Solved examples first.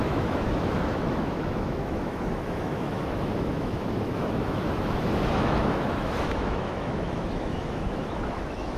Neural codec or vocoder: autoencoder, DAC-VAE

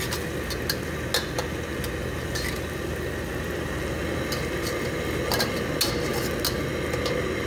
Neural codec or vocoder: none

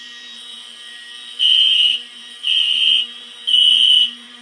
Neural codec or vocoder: none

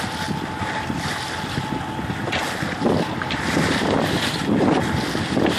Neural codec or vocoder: none